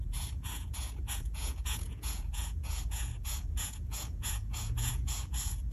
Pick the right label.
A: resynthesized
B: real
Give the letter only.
A